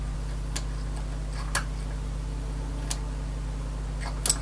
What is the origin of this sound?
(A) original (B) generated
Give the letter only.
A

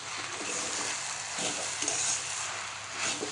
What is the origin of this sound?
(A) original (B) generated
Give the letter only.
A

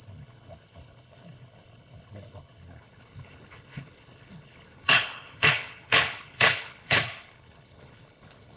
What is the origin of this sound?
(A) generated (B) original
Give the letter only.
A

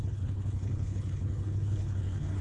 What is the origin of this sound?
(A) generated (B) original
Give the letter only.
A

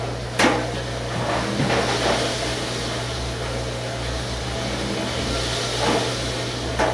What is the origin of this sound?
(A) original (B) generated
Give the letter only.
A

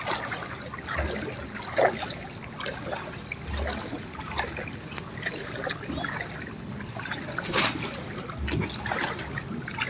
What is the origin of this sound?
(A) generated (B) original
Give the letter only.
B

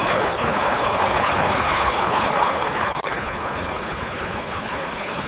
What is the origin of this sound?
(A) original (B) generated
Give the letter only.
B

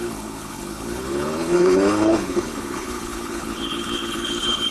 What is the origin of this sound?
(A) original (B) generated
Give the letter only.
B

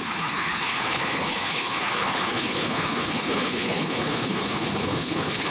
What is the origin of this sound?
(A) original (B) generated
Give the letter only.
B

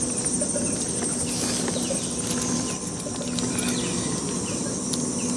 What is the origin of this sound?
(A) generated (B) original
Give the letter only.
B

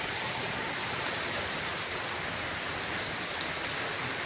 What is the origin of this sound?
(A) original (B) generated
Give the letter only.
A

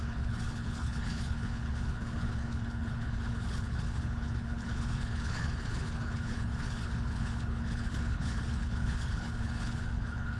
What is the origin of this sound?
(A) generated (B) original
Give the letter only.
A